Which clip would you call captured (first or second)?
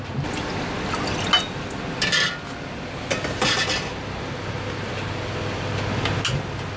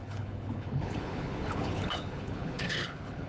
first